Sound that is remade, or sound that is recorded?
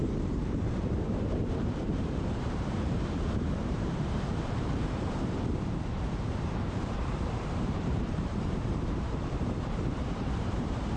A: remade